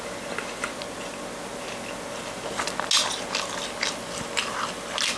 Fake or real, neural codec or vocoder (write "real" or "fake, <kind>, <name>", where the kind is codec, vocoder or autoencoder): real